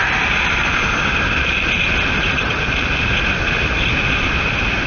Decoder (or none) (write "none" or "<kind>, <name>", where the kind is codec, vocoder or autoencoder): none